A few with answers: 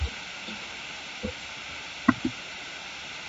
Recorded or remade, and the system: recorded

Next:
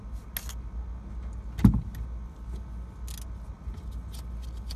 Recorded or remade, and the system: recorded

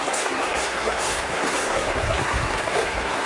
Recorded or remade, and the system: remade, codec, SNAC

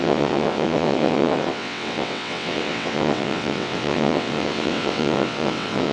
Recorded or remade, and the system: remade, vocoder, WaveNeXt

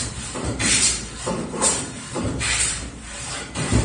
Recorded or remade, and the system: remade, vocoder, BigVGAN v2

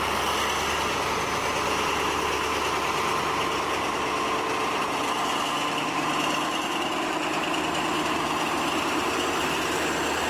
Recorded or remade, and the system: recorded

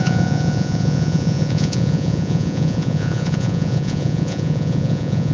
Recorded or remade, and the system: remade, vocoder, Vocos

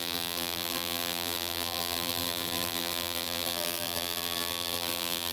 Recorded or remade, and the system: remade, vocoder, BigVGAN v2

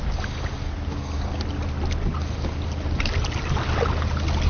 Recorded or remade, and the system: recorded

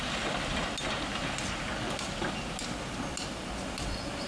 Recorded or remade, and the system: recorded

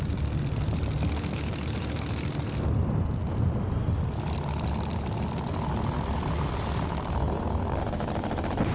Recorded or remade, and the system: recorded